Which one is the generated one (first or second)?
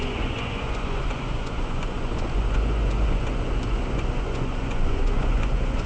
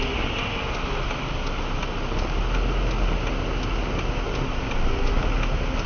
first